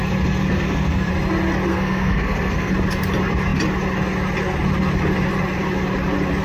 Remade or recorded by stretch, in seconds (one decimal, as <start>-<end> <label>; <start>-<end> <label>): 0.0-0.4 recorded; 0.4-1.1 remade; 1.1-1.7 recorded; 1.7-2.7 remade; 2.7-6.4 recorded